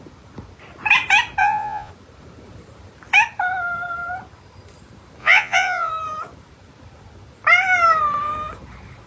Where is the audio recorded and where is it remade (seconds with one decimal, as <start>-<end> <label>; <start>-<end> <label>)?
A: 0.0-1.4 recorded; 1.4-1.9 remade; 1.9-5.2 recorded; 5.2-5.9 remade; 5.9-9.1 recorded